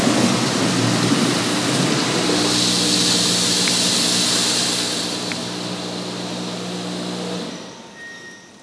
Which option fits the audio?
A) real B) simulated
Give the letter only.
A